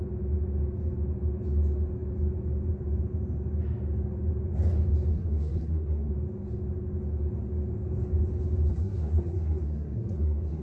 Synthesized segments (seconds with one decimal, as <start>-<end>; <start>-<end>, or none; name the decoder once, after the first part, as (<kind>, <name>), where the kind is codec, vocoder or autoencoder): 5.1-6.1 (codec, SNAC); 8.7-10.6